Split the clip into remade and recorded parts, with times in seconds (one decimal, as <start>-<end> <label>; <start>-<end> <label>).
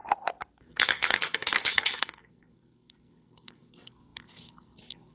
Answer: 0.0-0.6 recorded; 0.6-5.1 remade